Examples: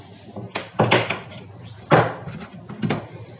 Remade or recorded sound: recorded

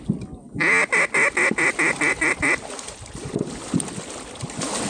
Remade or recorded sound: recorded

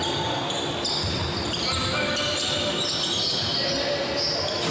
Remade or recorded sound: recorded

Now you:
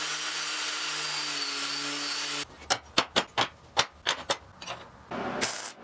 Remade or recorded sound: recorded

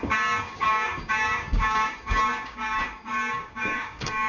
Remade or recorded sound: remade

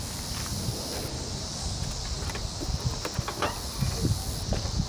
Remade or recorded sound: recorded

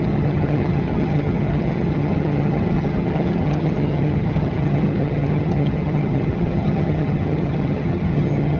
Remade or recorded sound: remade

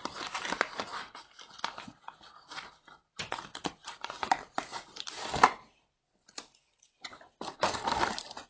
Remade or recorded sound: remade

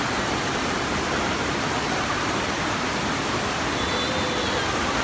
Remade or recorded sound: recorded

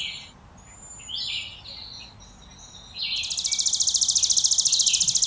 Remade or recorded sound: recorded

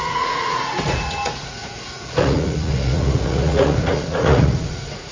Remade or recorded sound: remade